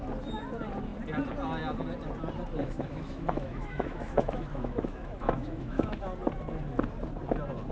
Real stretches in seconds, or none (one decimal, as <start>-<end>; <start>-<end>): 0.0-2.6; 6.0-7.7